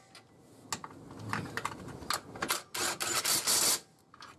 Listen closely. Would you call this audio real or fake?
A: real